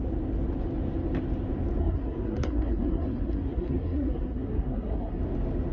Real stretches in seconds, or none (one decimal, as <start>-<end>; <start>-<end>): 0.0-1.8; 5.2-5.7